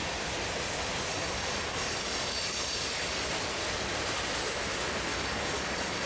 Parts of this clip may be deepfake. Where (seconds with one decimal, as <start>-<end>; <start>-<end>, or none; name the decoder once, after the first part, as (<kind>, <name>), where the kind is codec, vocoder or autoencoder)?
1.1-3.3 (codec, DAC); 5.1-6.1

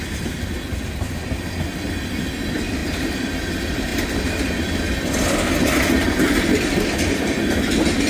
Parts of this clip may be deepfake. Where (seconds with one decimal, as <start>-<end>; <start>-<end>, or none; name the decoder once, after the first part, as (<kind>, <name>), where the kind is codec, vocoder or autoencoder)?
0.0-1.2 (vocoder, BigVGAN v2); 1.9-2.8; 3.5-3.9; 6.6-8.1

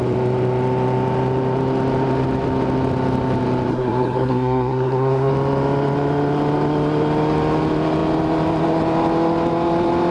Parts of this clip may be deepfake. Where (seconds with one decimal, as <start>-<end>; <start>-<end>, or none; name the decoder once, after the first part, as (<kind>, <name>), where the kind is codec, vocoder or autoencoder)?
3.7-5.3 (codec, SNAC)